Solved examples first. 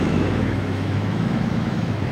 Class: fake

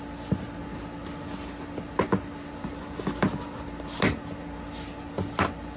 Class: real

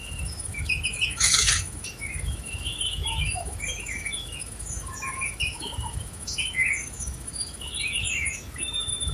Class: fake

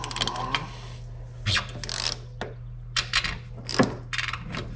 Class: real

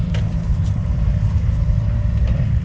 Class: fake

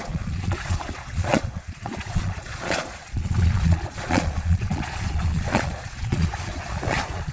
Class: fake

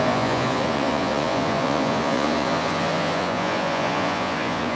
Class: fake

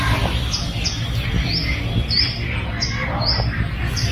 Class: real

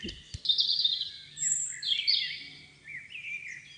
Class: real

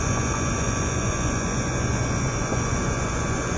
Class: fake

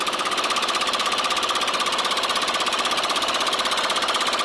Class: real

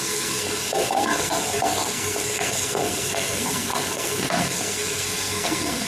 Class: fake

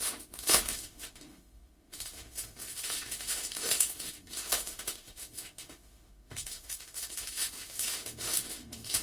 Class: fake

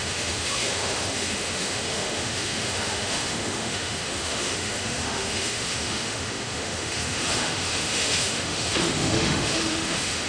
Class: fake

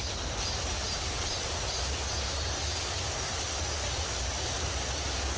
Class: real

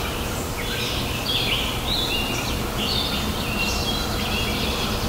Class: real